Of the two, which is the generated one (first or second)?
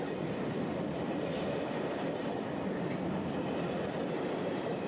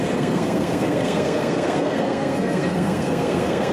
second